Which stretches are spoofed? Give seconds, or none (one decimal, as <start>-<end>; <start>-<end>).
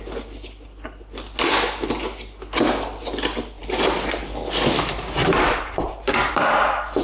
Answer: none